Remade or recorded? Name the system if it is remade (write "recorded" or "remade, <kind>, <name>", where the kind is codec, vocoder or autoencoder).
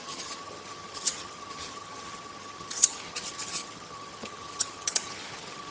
remade, vocoder, HiFi-GAN